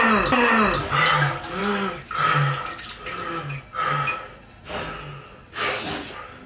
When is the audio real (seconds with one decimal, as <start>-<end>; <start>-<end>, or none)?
0.0-6.5